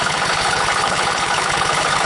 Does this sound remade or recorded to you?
remade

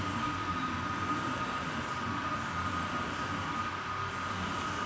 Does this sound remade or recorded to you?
recorded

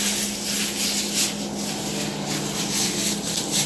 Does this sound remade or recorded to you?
recorded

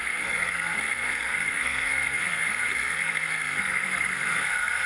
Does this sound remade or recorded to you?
remade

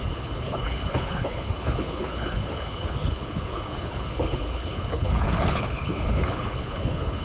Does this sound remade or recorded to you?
remade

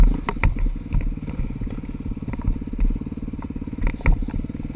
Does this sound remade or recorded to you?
recorded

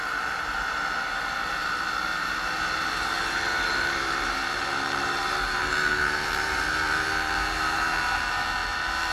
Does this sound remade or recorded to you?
remade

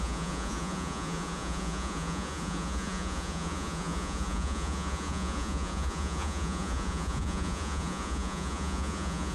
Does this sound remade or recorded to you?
remade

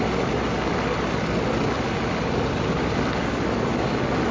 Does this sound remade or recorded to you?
recorded